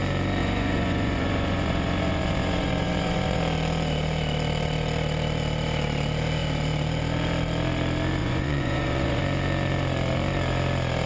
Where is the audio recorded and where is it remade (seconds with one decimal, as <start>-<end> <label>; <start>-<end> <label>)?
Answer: 0.0-0.4 recorded; 0.4-3.4 remade; 3.4-8.2 recorded; 8.2-9.2 remade; 9.2-11.1 recorded

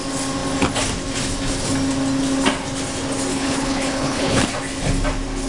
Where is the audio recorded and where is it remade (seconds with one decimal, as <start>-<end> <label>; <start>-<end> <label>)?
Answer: 0.0-3.3 recorded; 3.3-4.4 remade; 4.4-5.5 recorded

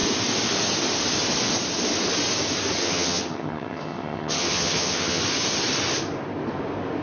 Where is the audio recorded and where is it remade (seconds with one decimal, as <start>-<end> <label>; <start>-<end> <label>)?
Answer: 0.0-2.8 recorded; 2.8-5.2 remade; 5.2-7.0 recorded

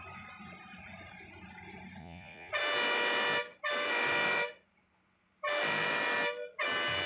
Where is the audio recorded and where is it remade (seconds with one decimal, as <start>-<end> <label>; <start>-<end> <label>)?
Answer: 0.0-2.0 recorded; 2.0-2.5 remade; 2.5-7.1 recorded

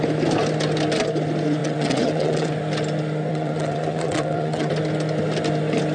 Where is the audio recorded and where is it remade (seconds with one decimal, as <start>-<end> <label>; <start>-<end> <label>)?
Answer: 0.0-1.6 recorded; 1.6-2.5 remade; 2.5-3.3 recorded; 3.3-4.7 remade; 4.7-5.9 recorded

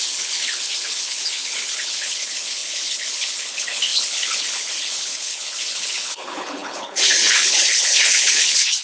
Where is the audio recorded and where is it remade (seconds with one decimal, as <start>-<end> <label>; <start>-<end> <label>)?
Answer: 0.0-8.8 remade

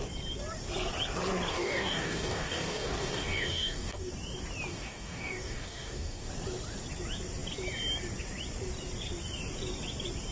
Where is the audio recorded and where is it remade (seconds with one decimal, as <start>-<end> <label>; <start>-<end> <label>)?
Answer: 0.0-1.5 recorded; 1.5-4.1 remade; 4.1-4.7 recorded; 4.7-6.3 remade; 6.3-10.3 recorded